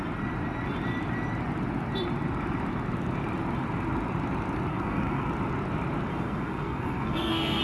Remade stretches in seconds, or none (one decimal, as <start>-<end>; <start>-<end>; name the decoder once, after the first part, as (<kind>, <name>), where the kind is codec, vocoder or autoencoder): 4.7-5.3 (codec, SNAC); 6.1-7.6